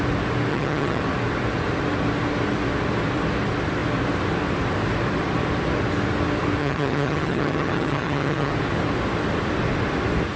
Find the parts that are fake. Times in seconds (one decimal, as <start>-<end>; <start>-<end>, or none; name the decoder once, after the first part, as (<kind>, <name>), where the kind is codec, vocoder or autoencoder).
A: 0.5-1.0 (vocoder, HiFi-GAN); 6.6-8.5